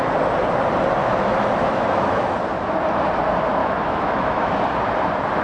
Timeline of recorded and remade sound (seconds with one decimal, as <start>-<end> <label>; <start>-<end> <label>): 0.0-1.0 recorded; 1.0-2.4 remade; 2.4-3.6 recorded; 3.6-4.6 remade; 4.6-5.4 recorded